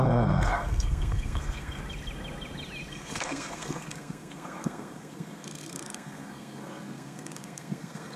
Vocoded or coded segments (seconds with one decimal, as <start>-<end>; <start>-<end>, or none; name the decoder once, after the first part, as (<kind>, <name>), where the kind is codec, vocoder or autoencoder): 0.0-1.8 (codec, SNAC); 2.9-8.2